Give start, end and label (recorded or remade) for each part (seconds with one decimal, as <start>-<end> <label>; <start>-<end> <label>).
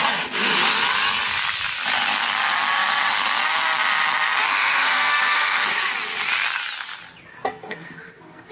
0.0-4.5 recorded; 4.5-5.9 remade; 5.9-7.3 recorded; 7.3-8.5 remade